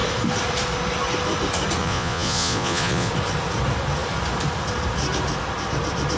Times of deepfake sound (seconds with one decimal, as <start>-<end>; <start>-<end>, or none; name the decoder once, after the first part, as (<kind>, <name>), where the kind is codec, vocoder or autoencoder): 1.8-3.1 (vocoder, Vocos)